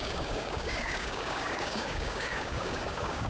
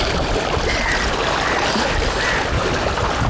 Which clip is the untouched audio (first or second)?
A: second